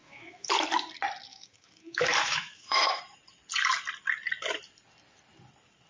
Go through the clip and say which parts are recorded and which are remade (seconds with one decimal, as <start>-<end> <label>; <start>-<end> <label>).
0.0-0.5 remade; 0.5-1.3 recorded; 1.3-3.0 remade; 3.0-5.9 recorded